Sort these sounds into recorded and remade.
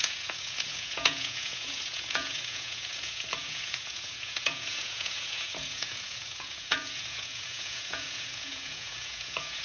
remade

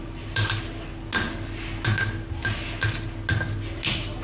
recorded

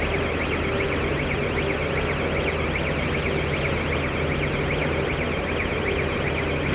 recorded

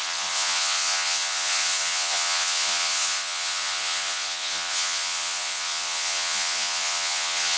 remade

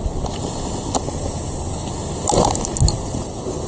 recorded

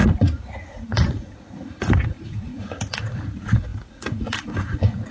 remade